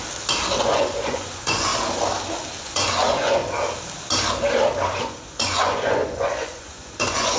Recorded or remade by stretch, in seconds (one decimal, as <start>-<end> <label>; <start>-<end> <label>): 0.0-0.6 recorded; 0.6-1.7 remade; 1.7-2.6 recorded; 2.6-3.4 remade; 3.4-5.0 recorded; 5.0-7.4 remade